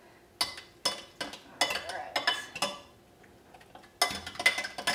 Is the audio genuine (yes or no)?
yes